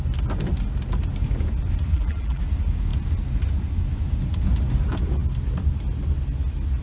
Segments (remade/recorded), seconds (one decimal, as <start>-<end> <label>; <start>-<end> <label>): 0.0-1.9 recorded; 1.9-2.4 remade; 2.4-6.8 recorded